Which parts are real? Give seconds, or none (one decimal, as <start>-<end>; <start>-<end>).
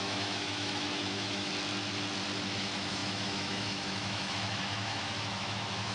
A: 1.5-2.6